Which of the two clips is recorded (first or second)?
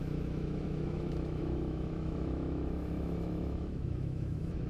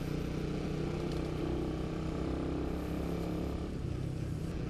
second